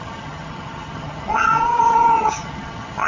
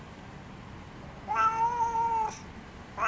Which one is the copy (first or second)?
first